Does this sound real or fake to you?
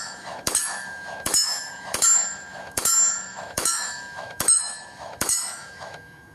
fake